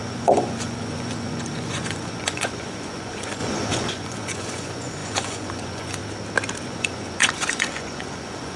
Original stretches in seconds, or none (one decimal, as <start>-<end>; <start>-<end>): 6.0-6.6